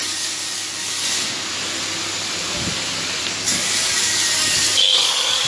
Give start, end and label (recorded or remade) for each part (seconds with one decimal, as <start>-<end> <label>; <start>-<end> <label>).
0.0-1.0 remade; 1.0-3.3 recorded; 3.3-5.5 remade